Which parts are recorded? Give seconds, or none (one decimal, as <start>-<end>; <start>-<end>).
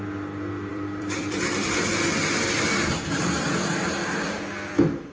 0.0-0.7; 3.8-5.1